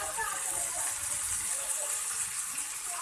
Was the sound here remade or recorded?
recorded